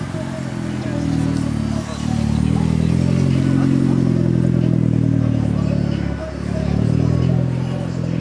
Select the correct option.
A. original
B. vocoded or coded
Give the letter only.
A